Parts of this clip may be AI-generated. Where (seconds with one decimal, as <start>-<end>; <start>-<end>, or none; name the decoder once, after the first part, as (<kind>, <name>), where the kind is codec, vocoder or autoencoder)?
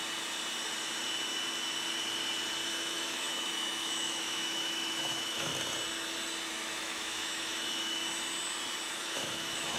2.7-5.5 (autoencoder, DAC-VAE); 6.5-8.0; 9.0-9.8